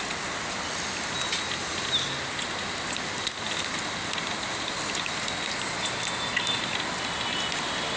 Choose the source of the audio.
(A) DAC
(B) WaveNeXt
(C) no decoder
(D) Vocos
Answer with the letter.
C